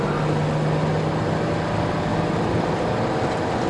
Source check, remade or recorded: recorded